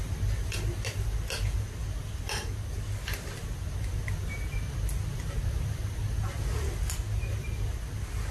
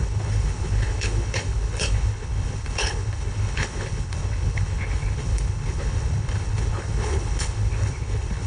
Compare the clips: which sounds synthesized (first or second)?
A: second